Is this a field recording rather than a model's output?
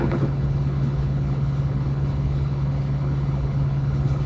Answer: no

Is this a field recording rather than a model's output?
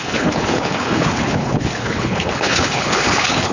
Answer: no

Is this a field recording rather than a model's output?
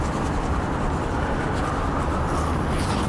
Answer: yes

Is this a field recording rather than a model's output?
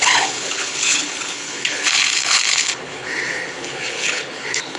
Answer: no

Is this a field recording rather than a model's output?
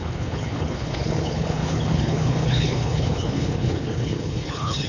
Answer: no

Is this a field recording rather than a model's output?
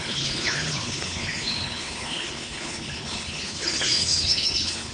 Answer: no